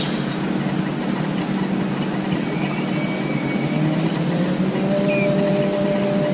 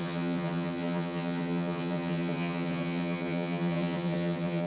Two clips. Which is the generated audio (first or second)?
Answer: second